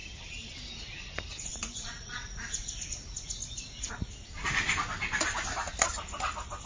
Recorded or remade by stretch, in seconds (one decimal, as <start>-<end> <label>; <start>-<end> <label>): 0.0-1.5 recorded; 1.5-4.3 remade; 4.3-6.7 recorded